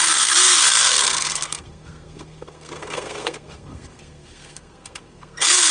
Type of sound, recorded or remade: remade